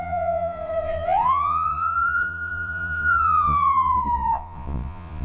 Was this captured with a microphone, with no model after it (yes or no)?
no